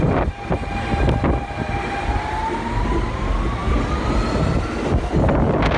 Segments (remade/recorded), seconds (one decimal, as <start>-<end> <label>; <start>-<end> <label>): 0.0-5.8 recorded